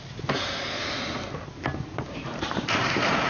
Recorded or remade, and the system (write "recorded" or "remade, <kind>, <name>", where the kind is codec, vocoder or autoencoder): recorded